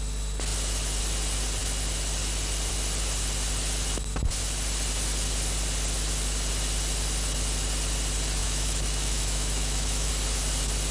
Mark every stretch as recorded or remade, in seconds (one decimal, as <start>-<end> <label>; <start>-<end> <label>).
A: 0.0-8.4 recorded; 8.4-10.1 remade; 10.1-10.9 recorded